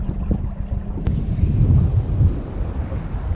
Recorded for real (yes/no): yes